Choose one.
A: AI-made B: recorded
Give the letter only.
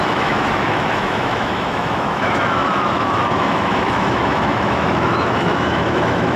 A